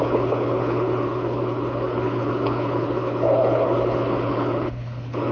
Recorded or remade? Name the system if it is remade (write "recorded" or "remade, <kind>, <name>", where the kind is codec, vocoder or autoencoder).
remade, codec, HILCodec